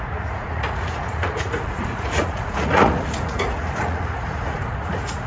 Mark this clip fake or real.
fake